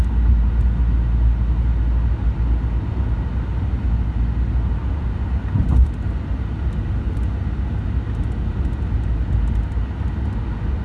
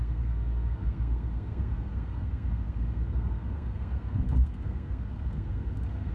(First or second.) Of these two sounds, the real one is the first